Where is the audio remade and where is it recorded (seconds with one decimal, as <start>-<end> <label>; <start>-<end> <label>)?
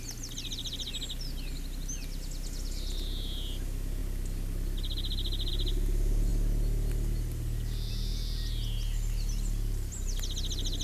0.0-10.8 recorded